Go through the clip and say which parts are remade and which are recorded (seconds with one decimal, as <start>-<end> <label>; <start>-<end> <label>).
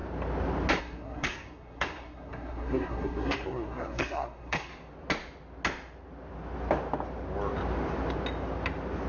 0.0-0.8 recorded; 0.8-4.7 remade; 4.7-9.1 recorded